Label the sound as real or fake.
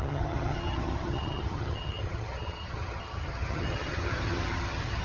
fake